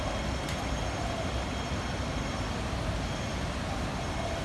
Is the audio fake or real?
real